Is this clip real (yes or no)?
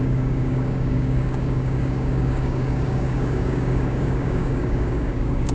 no